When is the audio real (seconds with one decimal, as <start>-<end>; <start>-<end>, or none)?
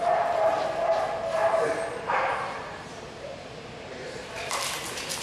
0.0-1.4; 4.5-5.2